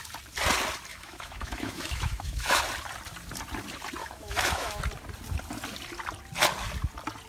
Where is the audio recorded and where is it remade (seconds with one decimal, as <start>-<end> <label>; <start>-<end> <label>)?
0.0-0.9 recorded; 0.9-2.6 remade; 2.6-4.0 recorded; 4.0-4.8 remade; 4.8-7.3 recorded